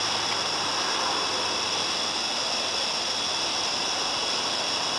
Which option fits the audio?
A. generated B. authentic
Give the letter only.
B